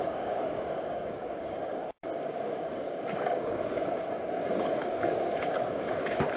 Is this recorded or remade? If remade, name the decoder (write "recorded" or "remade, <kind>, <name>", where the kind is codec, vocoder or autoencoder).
remade, codec, DAC